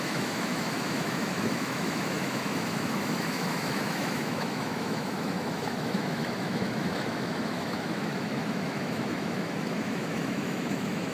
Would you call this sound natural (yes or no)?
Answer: no